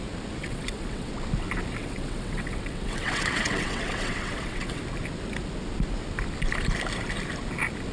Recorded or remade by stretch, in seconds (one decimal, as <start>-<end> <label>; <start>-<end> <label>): 0.0-0.4 recorded; 0.4-1.1 remade; 1.1-1.8 recorded; 1.8-4.8 remade; 4.8-7.9 recorded